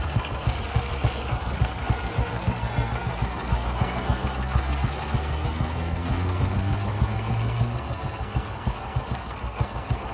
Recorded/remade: remade